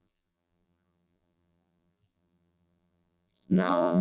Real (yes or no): no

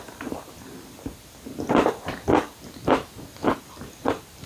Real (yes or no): yes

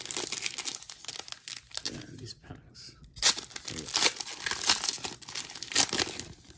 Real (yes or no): yes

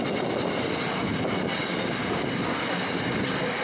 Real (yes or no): yes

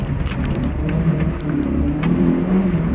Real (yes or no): no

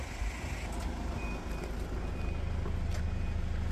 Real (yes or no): yes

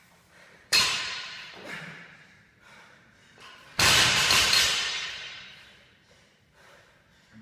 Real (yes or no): no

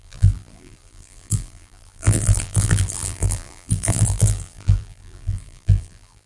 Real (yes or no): no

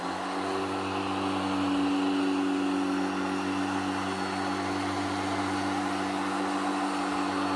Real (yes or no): yes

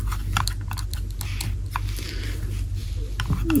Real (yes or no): yes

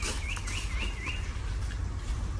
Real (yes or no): yes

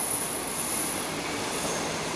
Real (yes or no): no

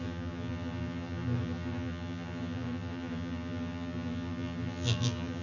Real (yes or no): no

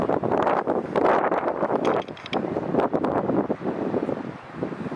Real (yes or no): no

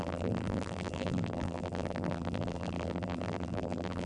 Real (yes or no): no